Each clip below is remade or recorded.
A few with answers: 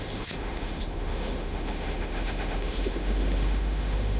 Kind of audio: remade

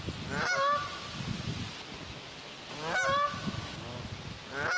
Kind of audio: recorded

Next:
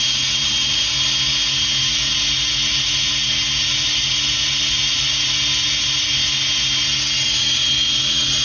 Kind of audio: recorded